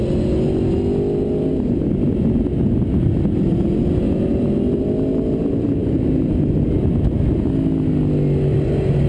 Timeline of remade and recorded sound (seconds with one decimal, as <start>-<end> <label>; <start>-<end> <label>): 0.0-9.1 recorded